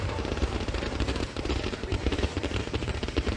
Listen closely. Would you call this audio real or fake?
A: fake